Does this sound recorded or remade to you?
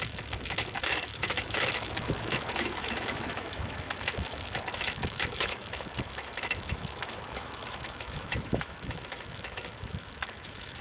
remade